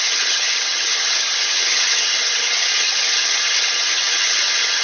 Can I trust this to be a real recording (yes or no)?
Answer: no